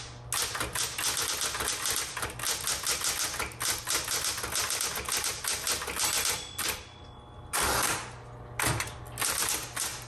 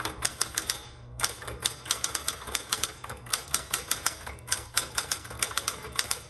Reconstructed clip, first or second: second